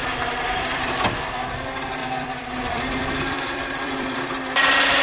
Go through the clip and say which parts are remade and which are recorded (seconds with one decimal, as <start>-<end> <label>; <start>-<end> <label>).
0.0-1.0 remade; 1.0-2.0 recorded; 2.0-4.3 remade; 4.3-5.0 recorded